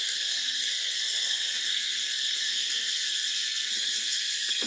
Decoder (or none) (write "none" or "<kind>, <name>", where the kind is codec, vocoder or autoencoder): codec, SNAC